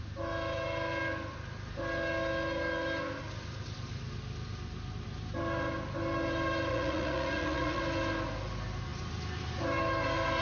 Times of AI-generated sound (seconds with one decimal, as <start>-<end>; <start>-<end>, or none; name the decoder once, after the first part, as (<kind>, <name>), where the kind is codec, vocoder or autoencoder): 6.7-7.8 (vocoder, Vocos)